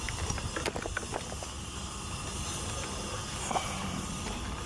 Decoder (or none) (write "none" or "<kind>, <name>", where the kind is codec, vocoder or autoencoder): none